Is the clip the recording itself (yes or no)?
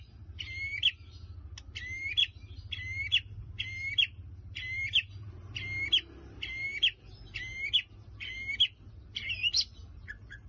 yes